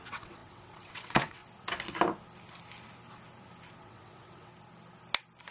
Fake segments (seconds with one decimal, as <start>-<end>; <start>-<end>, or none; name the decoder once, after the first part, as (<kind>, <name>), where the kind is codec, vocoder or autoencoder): 0.0-1.4 (vocoder, WaveNeXt); 3.8-4.5